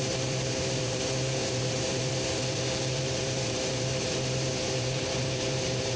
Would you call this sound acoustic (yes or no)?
no